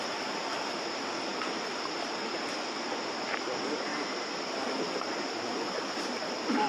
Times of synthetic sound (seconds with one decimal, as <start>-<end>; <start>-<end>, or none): 0.0-3.9; 5.8-6.7